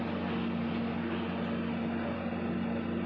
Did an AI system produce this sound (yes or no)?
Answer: no